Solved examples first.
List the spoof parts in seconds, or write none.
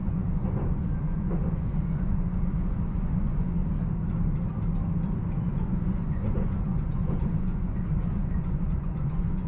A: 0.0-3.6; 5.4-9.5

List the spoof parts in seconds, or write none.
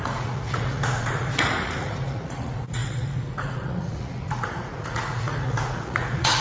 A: 0.0-6.4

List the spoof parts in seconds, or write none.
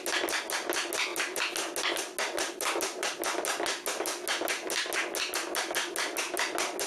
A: none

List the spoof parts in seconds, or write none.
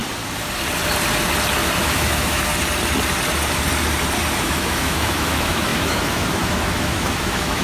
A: 1.8-2.5; 4.4-7.6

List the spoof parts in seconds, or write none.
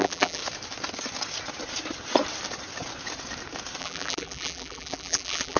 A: 0.0-0.4; 3.8-5.6